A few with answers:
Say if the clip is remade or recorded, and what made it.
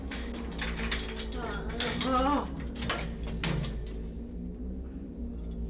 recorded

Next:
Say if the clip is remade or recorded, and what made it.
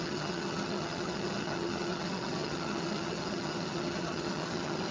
remade, vocoder, HiFi-GAN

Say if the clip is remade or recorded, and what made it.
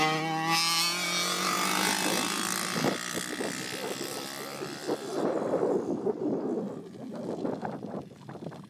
recorded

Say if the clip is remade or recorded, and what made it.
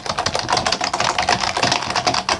recorded